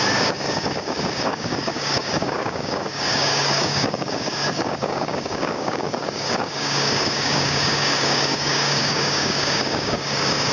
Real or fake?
fake